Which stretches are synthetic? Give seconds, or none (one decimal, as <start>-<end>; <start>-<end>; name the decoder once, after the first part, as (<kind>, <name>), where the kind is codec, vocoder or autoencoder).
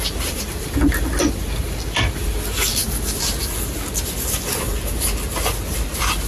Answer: 0.0-2.8 (vocoder, BigVGAN v2)